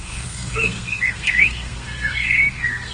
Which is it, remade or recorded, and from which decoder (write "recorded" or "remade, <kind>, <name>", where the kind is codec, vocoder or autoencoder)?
remade, codec, SNAC